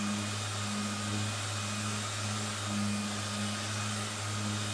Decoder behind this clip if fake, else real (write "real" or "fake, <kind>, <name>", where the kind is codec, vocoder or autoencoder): real